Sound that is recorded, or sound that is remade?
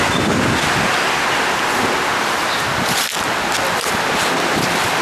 recorded